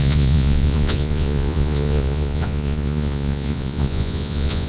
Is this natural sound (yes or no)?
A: no